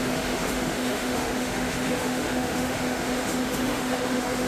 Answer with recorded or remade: remade